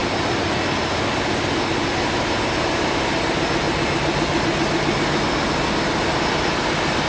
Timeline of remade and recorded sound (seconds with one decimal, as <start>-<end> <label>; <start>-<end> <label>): 0.0-7.1 recorded

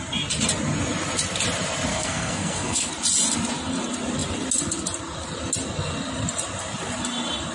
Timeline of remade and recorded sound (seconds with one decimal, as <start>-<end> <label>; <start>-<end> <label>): 0.0-1.9 recorded; 1.9-2.9 remade; 2.9-7.5 recorded

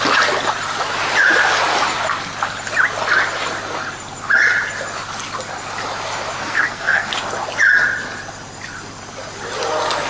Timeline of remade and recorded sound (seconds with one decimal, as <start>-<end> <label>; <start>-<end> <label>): 0.0-6.4 recorded; 6.4-7.1 remade; 7.1-10.1 recorded